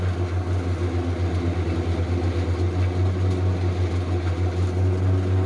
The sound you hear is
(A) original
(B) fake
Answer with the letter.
A